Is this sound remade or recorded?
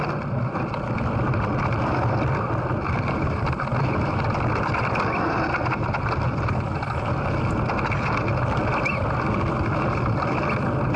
recorded